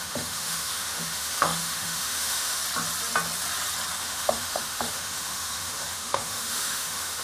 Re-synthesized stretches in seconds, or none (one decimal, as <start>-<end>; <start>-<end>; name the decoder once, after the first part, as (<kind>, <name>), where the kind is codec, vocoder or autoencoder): 0.0-2.6 (autoencoder, DAC-VAE); 4.0-7.2